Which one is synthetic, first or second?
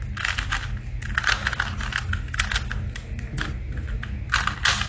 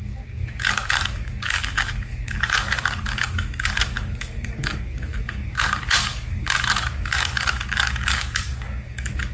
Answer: second